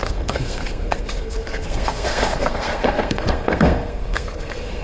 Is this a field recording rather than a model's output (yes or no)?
no